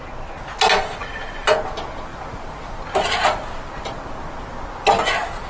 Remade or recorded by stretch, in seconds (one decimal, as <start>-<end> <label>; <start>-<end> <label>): 0.0-5.5 recorded